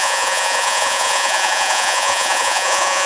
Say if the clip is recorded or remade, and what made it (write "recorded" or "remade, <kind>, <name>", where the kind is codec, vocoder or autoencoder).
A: remade, vocoder, Vocos